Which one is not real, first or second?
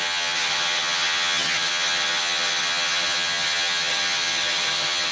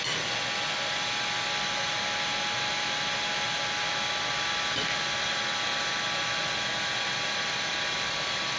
first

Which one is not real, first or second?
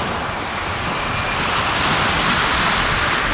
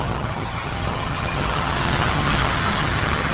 second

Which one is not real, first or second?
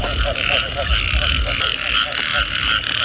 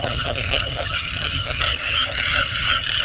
second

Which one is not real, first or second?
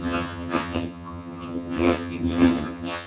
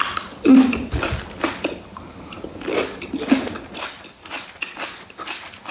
first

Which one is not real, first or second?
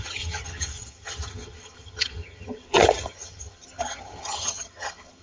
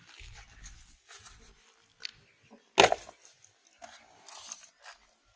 first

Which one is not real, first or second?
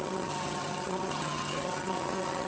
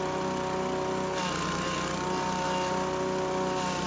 first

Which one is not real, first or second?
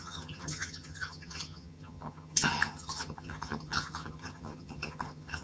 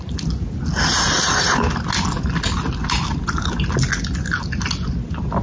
first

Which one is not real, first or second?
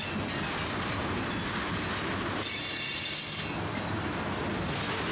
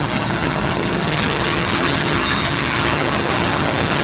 second